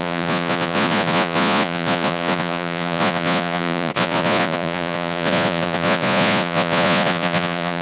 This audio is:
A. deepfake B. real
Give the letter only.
A